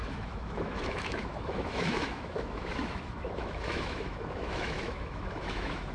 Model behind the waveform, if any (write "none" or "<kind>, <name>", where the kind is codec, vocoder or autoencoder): autoencoder, DAC-VAE